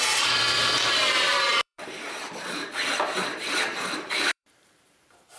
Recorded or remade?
remade